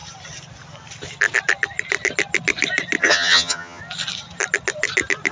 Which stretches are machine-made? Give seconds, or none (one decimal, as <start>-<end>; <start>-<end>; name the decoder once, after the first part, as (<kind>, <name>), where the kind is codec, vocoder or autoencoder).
3.0-3.8 (vocoder, HiFi-GAN)